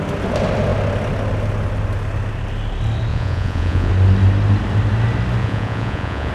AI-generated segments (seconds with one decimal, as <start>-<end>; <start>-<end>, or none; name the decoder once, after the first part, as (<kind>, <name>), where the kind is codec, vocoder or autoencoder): 3.1-3.9 (vocoder, Vocos); 5.4-6.3